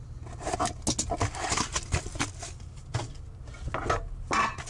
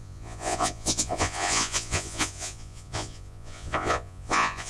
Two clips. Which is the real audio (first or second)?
first